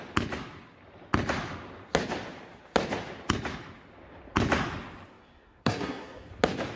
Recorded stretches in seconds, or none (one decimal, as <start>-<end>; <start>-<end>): 0.0-5.1; 6.3-6.8